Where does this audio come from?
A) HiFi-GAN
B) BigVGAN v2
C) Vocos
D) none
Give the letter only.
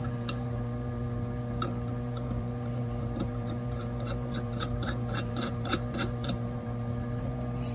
B